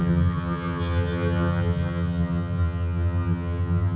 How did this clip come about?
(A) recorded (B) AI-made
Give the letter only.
B